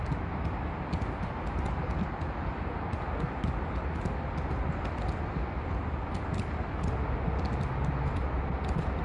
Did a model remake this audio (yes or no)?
no